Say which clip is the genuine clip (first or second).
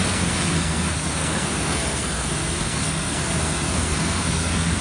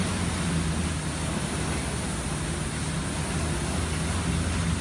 second